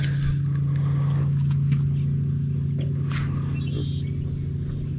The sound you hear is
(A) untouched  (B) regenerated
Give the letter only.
A